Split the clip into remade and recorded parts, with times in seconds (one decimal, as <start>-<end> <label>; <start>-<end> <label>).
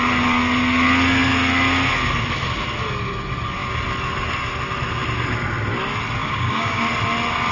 0.0-6.2 recorded; 6.2-6.8 remade; 6.8-7.5 recorded